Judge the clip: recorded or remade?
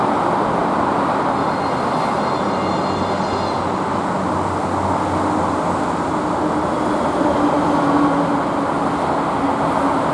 recorded